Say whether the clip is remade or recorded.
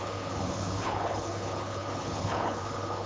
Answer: remade